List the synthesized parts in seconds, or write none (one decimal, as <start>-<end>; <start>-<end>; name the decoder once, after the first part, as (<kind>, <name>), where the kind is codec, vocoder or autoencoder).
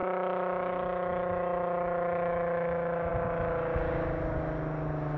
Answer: 0.0-3.1 (autoencoder, DAC-VAE)